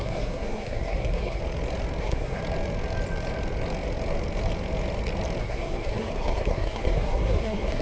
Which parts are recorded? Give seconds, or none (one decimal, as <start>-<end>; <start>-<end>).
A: 1.4-2.0; 2.4-5.4